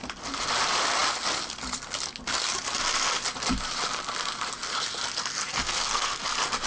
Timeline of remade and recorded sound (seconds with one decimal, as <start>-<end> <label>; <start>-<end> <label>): 0.0-5.5 recorded; 5.5-6.2 remade; 6.2-6.7 recorded